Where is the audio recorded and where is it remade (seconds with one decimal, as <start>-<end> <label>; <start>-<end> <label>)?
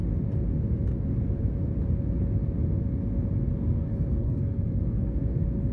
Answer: 0.0-4.2 recorded; 4.2-5.2 remade; 5.2-5.7 recorded